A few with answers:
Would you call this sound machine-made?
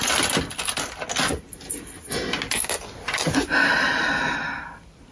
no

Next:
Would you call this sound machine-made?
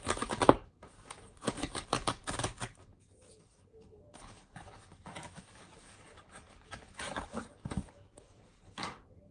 yes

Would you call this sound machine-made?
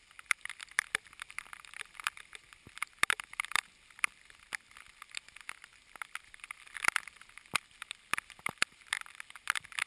no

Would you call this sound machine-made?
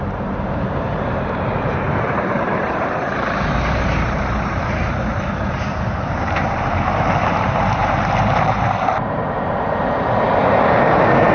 yes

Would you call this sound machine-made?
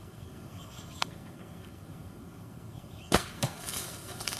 yes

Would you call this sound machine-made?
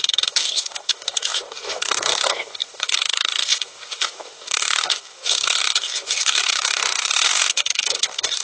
yes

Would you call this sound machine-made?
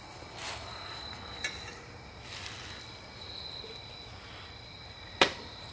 no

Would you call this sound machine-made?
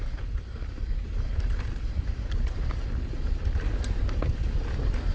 no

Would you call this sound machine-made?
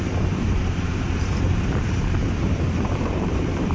yes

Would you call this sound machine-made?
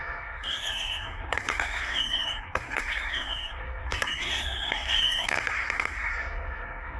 yes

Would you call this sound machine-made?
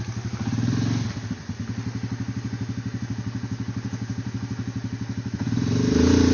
no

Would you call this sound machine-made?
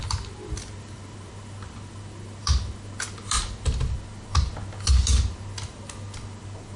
no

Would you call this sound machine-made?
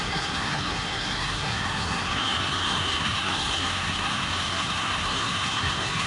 yes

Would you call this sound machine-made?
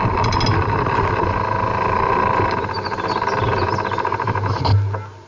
no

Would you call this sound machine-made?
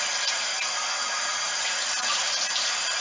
no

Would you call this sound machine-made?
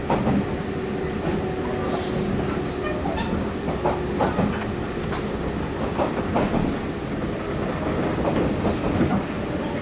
no